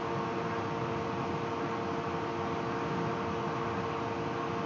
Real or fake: real